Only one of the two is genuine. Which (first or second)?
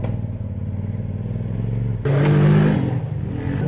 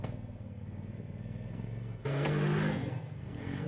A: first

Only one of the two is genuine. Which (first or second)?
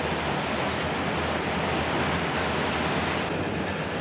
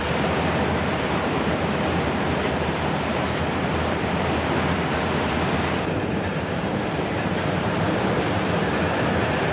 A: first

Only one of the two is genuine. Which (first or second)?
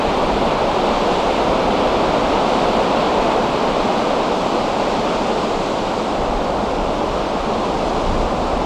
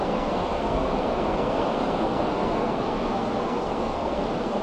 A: first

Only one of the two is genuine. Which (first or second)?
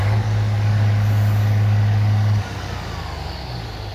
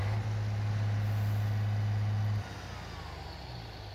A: second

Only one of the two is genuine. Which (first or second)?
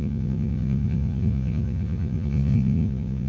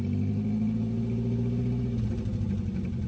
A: second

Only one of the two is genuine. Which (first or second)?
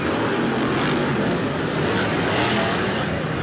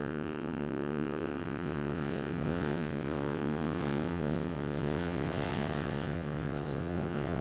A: first